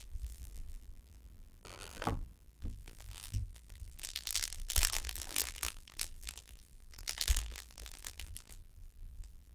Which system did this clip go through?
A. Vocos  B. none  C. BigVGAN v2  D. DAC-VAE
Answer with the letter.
C